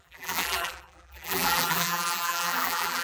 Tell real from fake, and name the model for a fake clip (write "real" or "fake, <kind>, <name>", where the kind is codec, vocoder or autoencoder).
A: fake, vocoder, BigVGAN v2